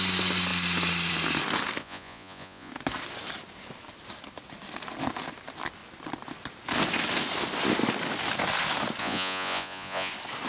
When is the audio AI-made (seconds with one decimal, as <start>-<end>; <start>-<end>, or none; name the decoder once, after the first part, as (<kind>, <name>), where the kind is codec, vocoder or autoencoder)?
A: 1.8-2.7 (vocoder, Vocos); 9.0-10.1